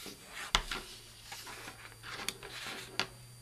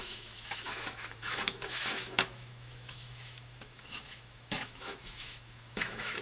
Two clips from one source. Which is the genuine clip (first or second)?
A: first